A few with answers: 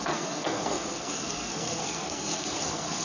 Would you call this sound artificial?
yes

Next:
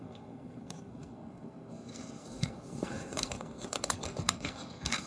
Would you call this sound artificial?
yes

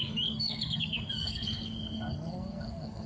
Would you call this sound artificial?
yes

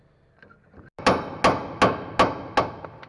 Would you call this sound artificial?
no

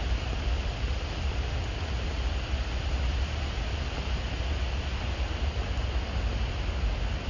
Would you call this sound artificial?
no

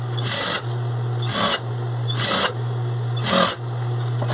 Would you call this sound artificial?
no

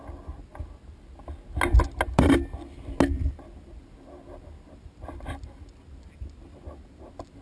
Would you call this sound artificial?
no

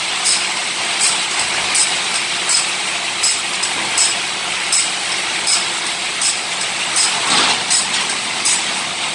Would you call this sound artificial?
no